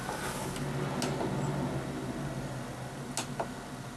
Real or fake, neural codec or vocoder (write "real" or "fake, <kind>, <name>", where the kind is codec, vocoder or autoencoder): real